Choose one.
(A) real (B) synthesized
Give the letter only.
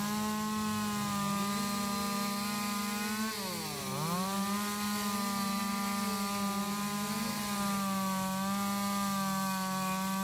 A